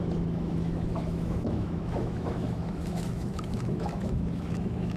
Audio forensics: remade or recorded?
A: remade